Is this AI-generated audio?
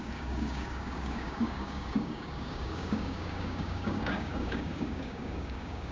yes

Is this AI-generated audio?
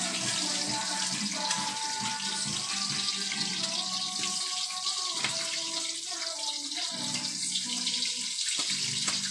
no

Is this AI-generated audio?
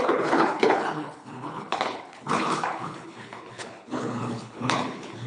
yes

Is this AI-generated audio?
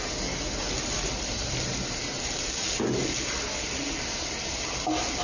no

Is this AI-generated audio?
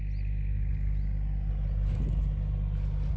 no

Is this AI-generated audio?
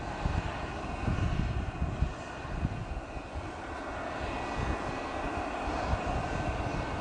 no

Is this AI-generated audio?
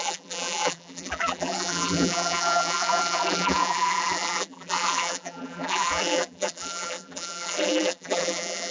yes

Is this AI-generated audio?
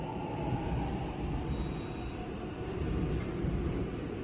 no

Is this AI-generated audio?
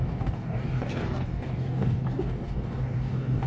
yes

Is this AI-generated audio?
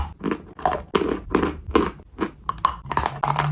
no